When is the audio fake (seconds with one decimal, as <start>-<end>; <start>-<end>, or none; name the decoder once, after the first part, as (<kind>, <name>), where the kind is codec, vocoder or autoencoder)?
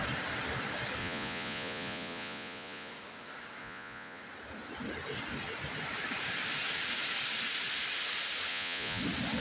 1.0-2.9 (vocoder, Vocos); 3.6-4.2; 8.5-9.0